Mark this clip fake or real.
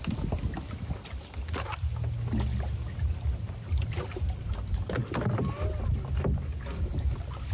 real